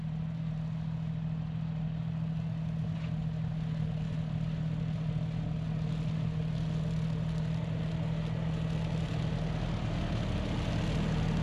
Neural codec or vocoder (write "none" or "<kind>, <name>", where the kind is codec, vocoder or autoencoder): none